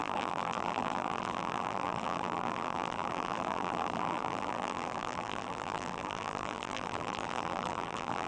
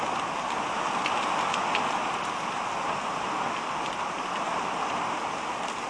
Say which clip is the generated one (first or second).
first